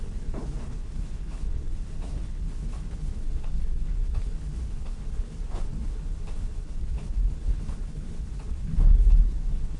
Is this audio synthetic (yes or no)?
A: yes